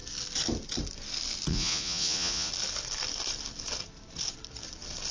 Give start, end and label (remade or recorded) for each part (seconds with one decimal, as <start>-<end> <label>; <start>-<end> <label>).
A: 0.0-1.5 recorded; 1.5-2.5 remade; 2.5-5.1 recorded